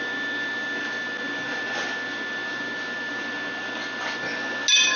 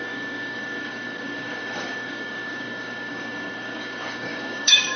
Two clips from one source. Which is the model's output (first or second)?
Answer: second